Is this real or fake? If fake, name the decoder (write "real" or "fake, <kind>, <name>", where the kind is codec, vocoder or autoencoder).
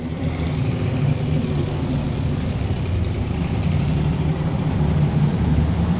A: fake, vocoder, BigVGAN v2